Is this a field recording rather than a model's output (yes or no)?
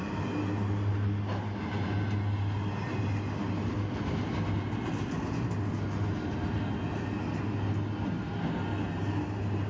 yes